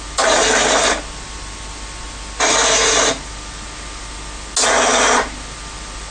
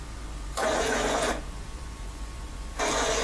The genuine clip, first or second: first